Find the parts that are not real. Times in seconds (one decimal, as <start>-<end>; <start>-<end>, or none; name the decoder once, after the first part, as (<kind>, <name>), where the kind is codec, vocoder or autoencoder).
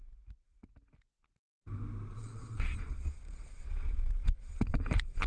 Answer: 2.1-5.3 (vocoder, Vocos)